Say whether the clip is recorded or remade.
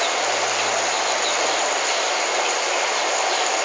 recorded